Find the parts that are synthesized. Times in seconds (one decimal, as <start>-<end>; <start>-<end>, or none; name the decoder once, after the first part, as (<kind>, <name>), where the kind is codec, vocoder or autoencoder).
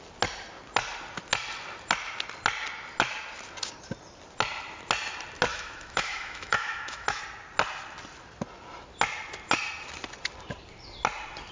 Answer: 5.5-7.2 (autoencoder, DAC-VAE)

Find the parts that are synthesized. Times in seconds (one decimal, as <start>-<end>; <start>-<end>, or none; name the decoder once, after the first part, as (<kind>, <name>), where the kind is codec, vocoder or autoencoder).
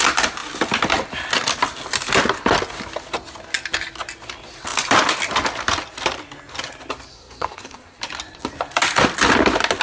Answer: 7.1-8.0 (codec, SNAC)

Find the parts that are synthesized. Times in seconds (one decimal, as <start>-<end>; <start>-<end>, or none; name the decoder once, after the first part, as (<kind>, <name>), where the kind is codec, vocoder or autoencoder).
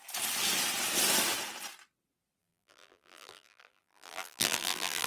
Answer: 2.4-5.1 (vocoder, BigVGAN v2)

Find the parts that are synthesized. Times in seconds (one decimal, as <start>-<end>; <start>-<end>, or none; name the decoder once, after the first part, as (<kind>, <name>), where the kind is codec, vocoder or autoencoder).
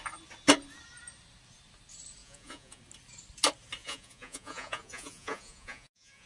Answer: 2.2-2.8 (vocoder, Vocos); 3.8-6.3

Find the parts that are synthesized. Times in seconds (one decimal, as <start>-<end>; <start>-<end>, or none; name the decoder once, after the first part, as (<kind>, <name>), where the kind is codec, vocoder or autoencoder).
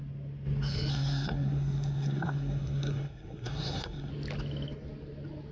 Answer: 0.9-4.1 (codec, SNAC)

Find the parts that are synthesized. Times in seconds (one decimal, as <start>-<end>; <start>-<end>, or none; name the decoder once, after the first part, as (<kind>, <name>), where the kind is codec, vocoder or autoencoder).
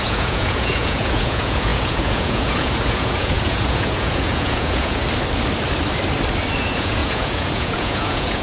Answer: 0.0-5.0 (vocoder, Vocos); 6.6-8.4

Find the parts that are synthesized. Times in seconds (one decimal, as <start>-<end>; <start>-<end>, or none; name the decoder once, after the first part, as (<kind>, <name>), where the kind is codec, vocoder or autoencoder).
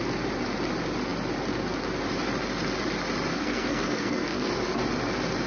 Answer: 3.3-4.5 (codec, SNAC)